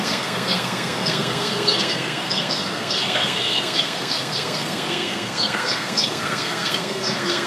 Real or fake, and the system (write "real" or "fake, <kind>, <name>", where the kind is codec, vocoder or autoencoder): fake, codec, SNAC